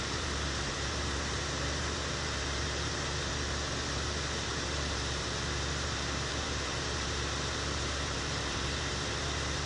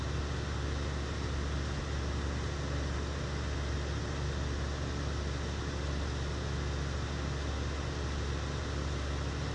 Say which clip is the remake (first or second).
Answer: first